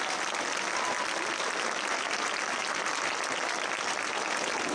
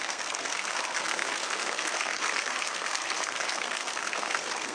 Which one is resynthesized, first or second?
second